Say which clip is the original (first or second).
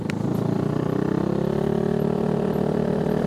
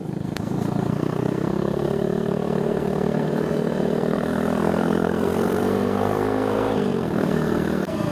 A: first